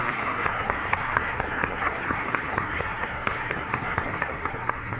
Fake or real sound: fake